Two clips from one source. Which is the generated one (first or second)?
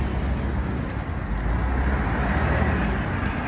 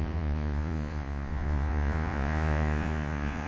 second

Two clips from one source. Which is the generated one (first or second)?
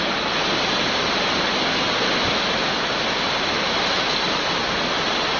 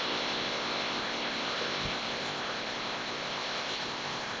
second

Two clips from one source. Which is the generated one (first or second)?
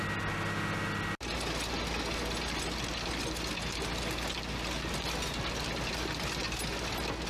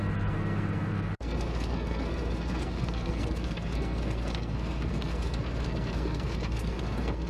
second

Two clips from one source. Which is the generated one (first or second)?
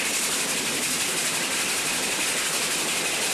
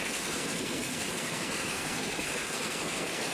second